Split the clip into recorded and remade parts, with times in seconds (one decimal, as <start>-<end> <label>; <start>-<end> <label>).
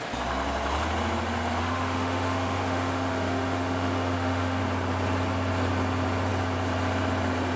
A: 0.0-1.6 recorded; 1.6-4.6 remade; 4.6-7.6 recorded